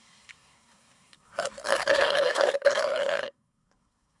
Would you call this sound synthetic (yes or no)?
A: yes